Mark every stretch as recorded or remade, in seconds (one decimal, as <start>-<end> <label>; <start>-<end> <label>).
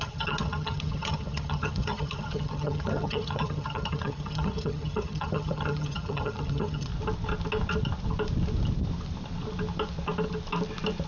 0.0-6.9 remade; 6.9-11.1 recorded